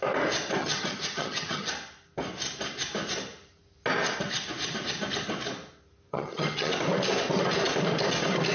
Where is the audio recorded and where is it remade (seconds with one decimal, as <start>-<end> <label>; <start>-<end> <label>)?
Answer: 0.0-0.6 recorded; 0.6-1.7 remade; 1.7-6.1 recorded; 6.1-6.7 remade; 6.7-8.5 recorded